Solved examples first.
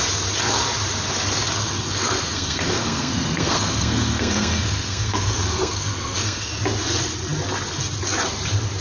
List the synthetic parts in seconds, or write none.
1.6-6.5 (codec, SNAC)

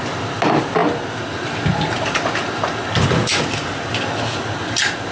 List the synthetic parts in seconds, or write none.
none